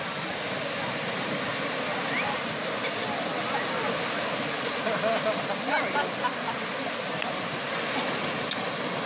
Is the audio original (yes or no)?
yes